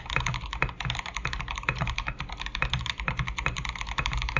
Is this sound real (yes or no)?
yes